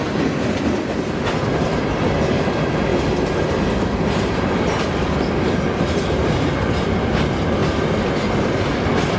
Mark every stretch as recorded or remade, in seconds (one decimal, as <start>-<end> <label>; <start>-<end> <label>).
0.0-2.9 remade; 2.9-5.2 recorded; 5.2-9.2 remade